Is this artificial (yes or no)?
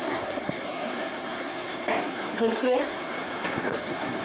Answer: yes